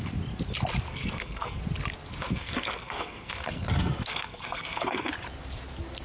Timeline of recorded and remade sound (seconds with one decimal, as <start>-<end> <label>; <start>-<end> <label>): 0.0-0.9 recorded; 0.9-1.6 remade; 1.6-2.1 recorded; 2.1-5.1 remade; 5.1-6.0 recorded